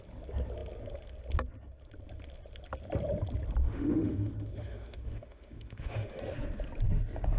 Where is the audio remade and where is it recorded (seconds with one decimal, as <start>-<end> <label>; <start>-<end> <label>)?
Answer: 0.0-3.6 recorded; 3.6-6.2 remade; 6.2-7.4 recorded